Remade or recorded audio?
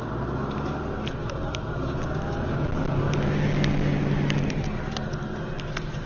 recorded